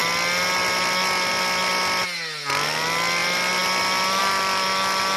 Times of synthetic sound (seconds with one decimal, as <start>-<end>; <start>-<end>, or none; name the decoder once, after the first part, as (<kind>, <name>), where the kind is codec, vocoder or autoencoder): none